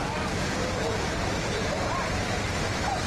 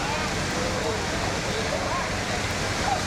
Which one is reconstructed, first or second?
first